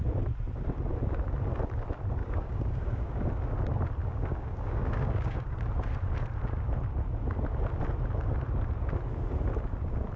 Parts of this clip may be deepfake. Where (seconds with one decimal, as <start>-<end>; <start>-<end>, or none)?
2.2-3.3; 4.0-5.5